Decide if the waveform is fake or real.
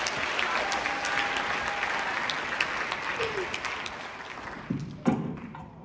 real